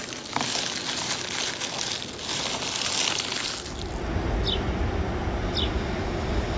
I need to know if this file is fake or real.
real